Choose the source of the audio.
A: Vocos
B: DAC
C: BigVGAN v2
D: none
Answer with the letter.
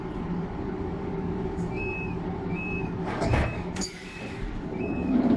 B